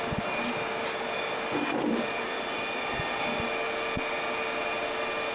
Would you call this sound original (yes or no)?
yes